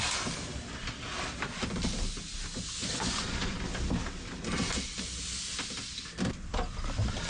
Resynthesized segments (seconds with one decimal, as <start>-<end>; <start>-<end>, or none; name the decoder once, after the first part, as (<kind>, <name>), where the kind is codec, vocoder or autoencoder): 2.8-3.6 (vocoder, Vocos)